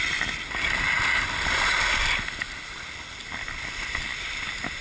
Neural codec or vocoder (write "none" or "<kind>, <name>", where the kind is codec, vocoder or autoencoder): none